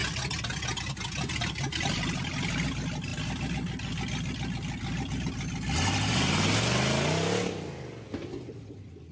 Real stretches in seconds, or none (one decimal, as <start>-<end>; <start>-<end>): 0.0-9.1